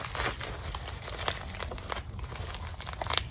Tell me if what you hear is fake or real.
real